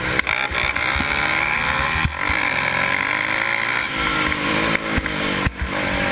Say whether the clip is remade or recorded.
recorded